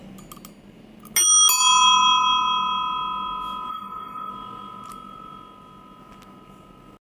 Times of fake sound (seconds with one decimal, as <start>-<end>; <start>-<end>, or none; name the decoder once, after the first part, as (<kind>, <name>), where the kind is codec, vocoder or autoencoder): 3.7-4.3 (codec, DAC)